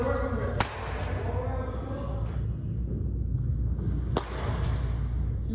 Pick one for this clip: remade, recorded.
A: recorded